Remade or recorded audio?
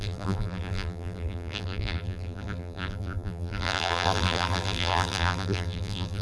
remade